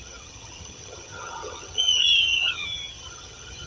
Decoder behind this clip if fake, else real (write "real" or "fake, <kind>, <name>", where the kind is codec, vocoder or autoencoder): fake, vocoder, HiFi-GAN